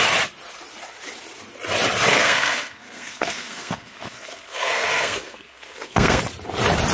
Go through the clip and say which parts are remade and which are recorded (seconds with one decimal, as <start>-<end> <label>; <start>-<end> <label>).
0.0-2.1 recorded; 2.1-6.2 remade; 6.2-6.9 recorded